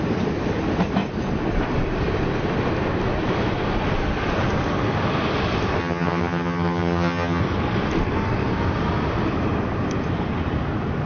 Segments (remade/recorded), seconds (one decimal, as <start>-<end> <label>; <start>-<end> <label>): 0.0-5.8 recorded; 5.8-7.4 remade; 7.4-11.1 recorded